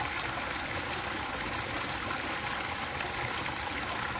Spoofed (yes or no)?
yes